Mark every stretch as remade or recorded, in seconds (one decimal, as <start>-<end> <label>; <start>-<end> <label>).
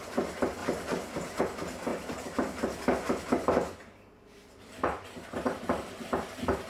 0.0-6.7 recorded